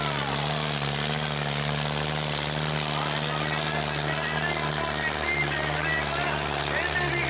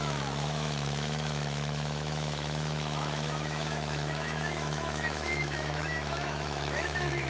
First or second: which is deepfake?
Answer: second